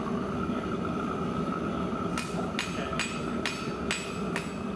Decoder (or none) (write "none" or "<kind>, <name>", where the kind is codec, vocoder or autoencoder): none